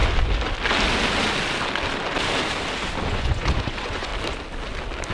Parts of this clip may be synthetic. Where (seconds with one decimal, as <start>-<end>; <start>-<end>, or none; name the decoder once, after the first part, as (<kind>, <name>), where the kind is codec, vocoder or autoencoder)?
3.1-4.1 (vocoder, Vocos)

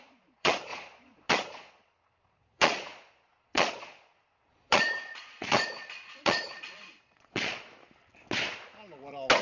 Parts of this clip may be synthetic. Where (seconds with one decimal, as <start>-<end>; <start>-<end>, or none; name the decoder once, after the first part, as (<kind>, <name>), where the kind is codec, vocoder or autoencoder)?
0.0-7.7 (vocoder, Vocos)

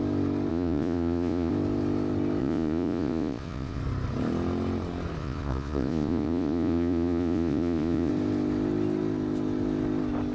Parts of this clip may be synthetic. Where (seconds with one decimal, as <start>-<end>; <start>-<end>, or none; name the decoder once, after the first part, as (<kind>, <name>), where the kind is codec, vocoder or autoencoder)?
0.5-1.5 (vocoder, Vocos); 2.4-3.8; 5.2-8.1

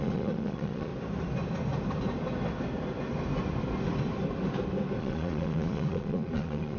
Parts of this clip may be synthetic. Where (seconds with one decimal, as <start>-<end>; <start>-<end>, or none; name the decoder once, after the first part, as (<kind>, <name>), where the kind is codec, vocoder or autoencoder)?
0.0-0.9 (vocoder, Vocos); 5.0-6.8

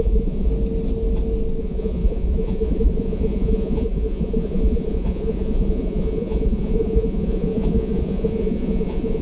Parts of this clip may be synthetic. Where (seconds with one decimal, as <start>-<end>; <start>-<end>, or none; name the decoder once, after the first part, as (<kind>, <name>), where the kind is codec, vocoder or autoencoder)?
0.0-0.5 (vocoder, Vocos); 1.6-9.2

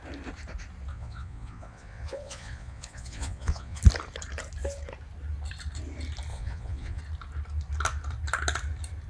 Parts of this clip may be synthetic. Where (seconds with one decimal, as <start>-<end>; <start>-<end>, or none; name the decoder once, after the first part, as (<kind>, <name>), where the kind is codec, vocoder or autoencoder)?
0.9-3.8 (vocoder, Vocos); 6.3-7.0

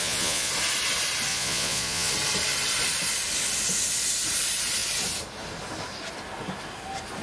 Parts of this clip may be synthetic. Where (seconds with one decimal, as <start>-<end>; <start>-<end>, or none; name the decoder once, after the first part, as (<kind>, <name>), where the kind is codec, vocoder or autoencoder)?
0.0-0.5 (vocoder, Vocos); 1.3-2.1